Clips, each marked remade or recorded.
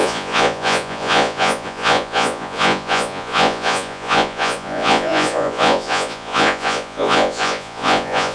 remade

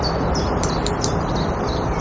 recorded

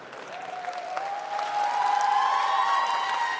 recorded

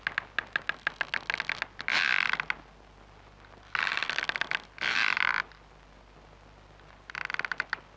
recorded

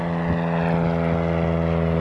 recorded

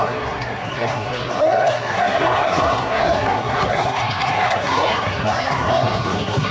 remade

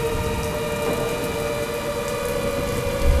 recorded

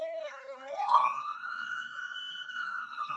remade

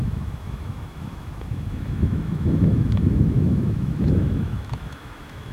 remade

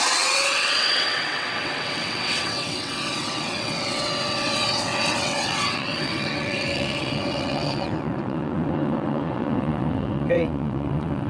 remade